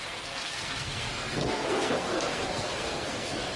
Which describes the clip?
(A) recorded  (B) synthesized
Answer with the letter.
B